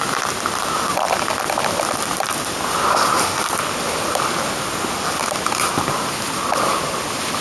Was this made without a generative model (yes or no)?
yes